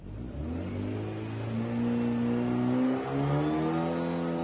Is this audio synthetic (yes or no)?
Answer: no